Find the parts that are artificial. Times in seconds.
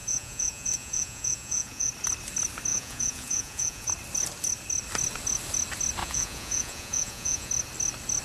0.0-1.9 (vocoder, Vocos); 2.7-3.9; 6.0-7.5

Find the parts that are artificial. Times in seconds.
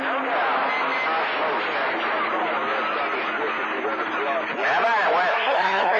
5.3-6.0 (codec, SNAC)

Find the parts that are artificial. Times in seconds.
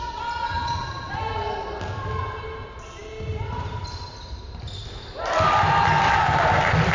0.5-1.2 (vocoder, Vocos)